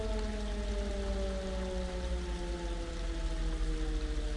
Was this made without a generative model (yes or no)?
yes